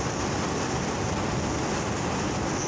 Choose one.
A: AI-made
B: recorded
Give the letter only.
B